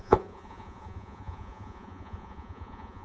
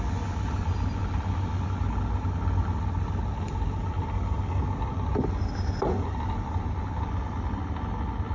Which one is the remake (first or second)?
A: first